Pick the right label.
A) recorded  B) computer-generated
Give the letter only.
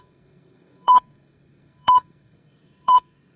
B